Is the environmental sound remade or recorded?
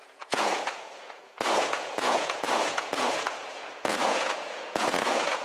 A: remade